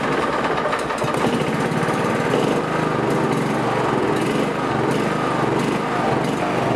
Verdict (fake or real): real